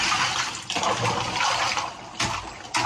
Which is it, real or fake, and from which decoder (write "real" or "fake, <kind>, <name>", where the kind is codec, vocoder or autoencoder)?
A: real